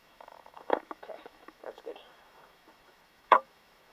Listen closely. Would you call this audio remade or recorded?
remade